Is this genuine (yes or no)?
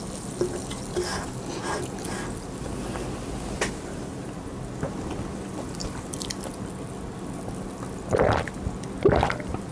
yes